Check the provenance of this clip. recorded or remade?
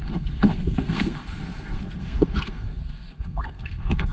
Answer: remade